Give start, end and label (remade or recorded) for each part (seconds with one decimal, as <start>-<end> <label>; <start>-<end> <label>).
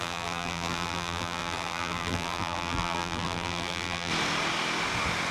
0.0-4.1 remade; 4.1-5.3 recorded